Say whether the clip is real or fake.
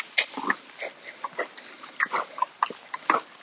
real